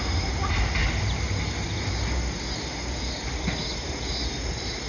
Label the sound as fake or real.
real